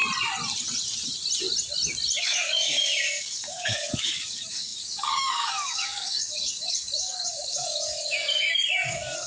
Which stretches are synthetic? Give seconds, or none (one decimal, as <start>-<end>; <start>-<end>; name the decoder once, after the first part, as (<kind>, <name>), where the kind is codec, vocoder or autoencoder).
2.2-9.3 (codec, DAC)